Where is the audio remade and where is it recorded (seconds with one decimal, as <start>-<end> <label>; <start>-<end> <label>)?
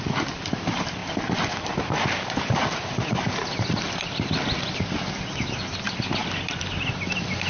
0.0-7.5 recorded